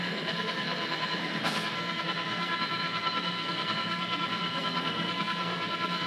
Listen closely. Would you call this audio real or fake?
fake